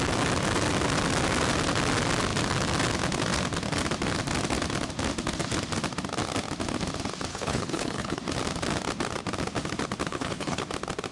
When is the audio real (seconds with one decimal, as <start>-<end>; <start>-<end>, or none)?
0.0-7.3; 8.2-10.1; 10.6-11.1